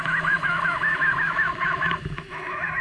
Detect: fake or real fake